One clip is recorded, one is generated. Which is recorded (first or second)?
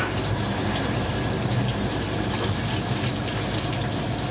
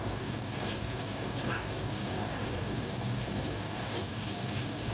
first